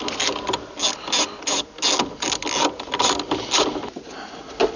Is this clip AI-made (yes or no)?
no